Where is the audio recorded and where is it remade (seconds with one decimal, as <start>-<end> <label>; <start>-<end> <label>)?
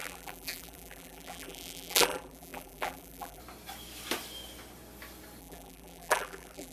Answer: 0.0-3.4 remade; 3.4-5.4 recorded; 5.4-6.7 remade